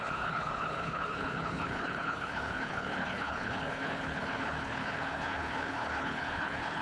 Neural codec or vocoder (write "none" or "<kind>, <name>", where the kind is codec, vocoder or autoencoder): codec, HILCodec